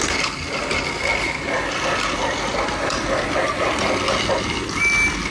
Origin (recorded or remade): recorded